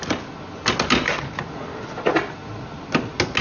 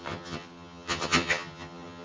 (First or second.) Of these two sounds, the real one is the first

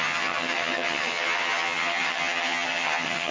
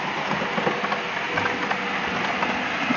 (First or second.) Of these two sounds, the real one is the second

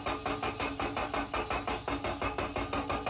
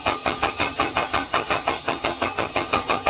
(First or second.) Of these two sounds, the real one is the first